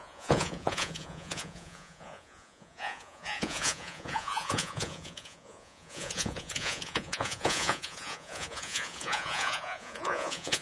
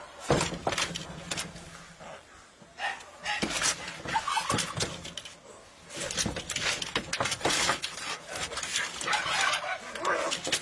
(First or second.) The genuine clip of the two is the second